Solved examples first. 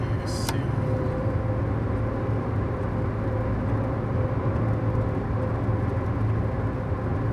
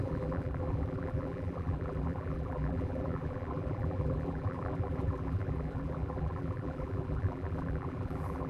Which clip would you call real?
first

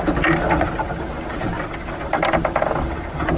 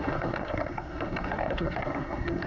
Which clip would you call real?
first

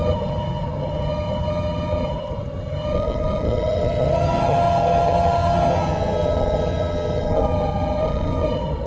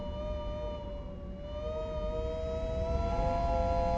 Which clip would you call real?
second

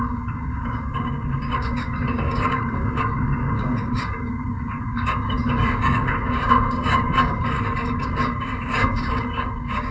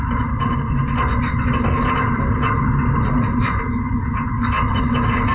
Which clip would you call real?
second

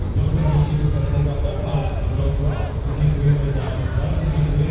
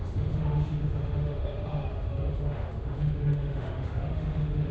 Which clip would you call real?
first